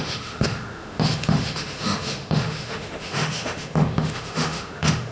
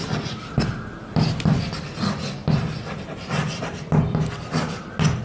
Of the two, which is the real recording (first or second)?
second